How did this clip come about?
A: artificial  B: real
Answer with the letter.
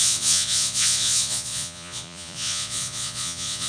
A